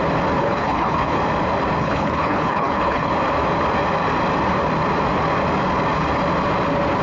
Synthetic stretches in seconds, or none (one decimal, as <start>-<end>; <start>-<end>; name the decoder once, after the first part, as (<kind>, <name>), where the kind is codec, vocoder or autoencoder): 0.4-1.2 (codec, HILCodec); 1.8-3.1

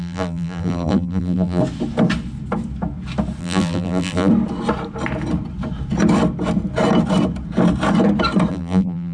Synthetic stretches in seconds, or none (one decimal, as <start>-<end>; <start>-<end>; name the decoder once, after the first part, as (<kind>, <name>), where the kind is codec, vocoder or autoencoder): 0.0-1.6 (vocoder, BigVGAN v2); 3.4-4.3; 8.5-9.1

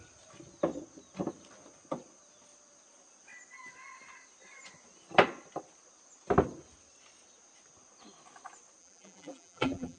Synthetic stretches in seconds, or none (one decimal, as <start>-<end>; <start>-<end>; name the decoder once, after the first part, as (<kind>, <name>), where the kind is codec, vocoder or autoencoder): 8.8-10.0 (vocoder, BigVGAN v2)

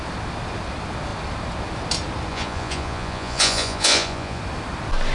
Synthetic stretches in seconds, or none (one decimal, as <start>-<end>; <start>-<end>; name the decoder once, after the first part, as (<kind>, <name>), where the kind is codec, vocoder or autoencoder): 2.3-4.4 (vocoder, Vocos)